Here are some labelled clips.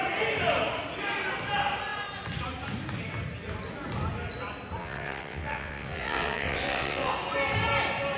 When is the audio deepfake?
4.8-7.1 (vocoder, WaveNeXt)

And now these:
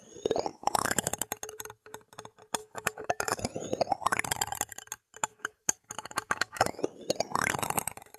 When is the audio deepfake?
0.5-1.1 (codec, DAC); 2.6-3.4; 5.3-6.8

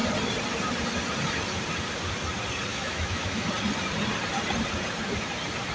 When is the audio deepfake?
2.7-3.5 (autoencoder, DAC-VAE)

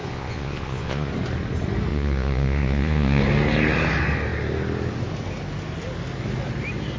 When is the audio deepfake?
0.0-1.1 (vocoder, Vocos); 1.9-3.2

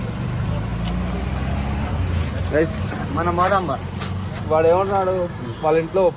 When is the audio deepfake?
none

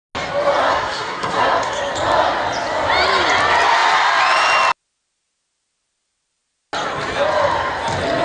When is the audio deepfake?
0.6-1.8 (codec, SNAC)